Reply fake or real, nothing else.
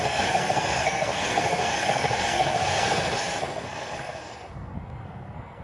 fake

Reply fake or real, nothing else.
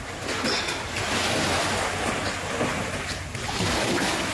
real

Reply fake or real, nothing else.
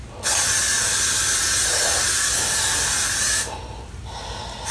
real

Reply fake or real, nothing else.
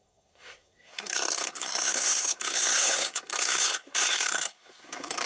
fake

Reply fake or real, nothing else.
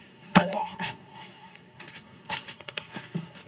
fake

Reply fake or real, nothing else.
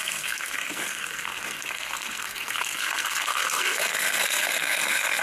fake